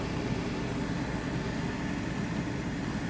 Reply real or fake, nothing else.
real